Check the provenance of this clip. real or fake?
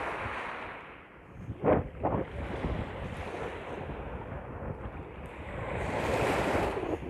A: real